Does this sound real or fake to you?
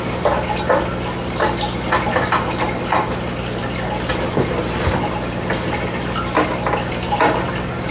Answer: real